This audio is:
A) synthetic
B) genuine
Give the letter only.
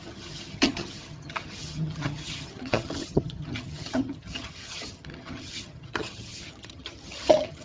A